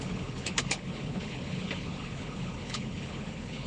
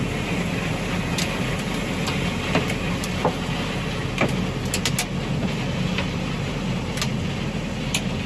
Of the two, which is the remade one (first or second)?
first